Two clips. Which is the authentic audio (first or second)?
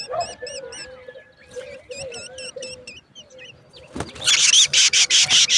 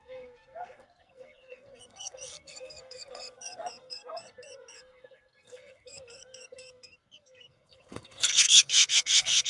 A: first